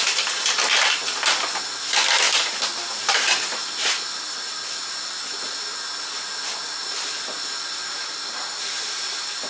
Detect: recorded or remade recorded